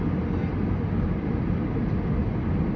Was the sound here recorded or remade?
recorded